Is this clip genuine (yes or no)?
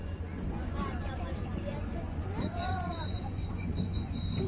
no